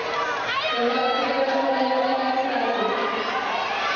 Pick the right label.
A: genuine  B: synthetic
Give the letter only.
B